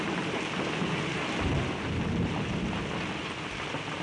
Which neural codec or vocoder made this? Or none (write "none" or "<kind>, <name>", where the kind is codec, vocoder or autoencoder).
none